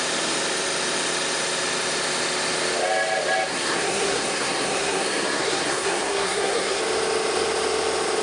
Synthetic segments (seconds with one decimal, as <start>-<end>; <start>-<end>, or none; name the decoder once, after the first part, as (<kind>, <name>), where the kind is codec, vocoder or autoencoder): 3.5-6.8 (codec, SNAC)